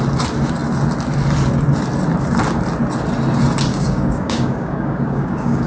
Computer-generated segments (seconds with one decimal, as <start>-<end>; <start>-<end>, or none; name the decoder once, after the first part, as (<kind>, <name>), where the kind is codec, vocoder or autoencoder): 3.7-5.7 (codec, DAC)